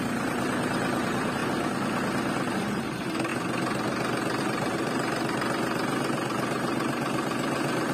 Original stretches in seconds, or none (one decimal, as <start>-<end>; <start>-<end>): 1.4-2.5; 3.3-4.4